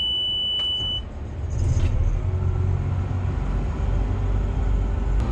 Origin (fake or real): real